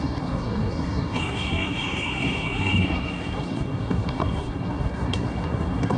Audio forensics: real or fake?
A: fake